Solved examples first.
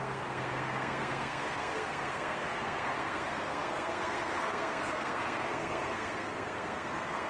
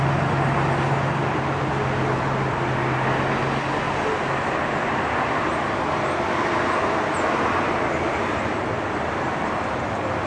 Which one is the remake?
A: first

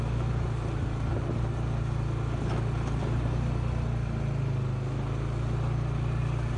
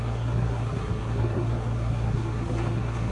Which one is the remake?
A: second